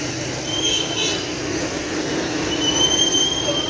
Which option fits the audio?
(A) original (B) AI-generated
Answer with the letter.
A